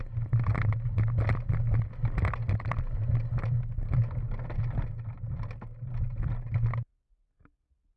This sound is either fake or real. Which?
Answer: real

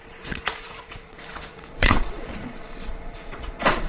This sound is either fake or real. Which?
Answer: fake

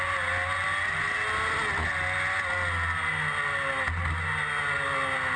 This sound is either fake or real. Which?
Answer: real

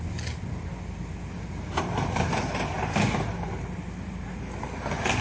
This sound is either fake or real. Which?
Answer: real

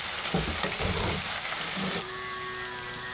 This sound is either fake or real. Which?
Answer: real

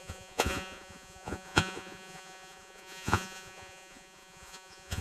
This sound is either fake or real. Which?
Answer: fake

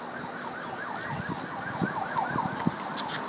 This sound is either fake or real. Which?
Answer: real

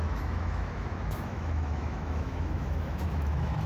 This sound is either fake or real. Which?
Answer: fake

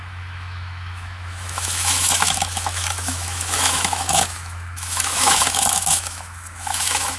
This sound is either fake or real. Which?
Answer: fake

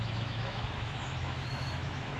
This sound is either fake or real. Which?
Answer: fake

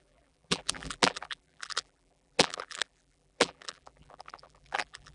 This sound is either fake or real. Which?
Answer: fake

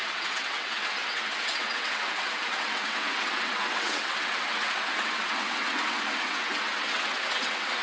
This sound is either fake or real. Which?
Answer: fake